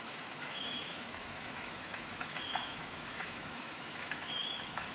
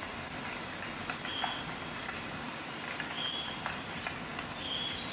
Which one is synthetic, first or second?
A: first